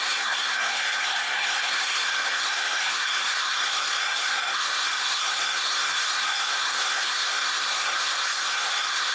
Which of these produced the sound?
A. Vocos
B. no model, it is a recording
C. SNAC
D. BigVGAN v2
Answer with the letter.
C